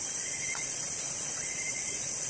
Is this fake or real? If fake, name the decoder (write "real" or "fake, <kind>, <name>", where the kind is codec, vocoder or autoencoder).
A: fake, vocoder, Vocos